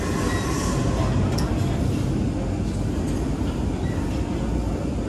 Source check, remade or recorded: recorded